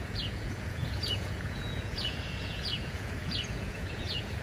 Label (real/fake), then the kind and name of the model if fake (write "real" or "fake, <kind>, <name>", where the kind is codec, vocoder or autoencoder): fake, vocoder, Vocos